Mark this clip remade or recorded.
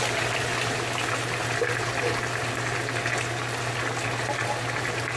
recorded